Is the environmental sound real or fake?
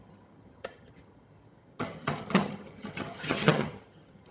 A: fake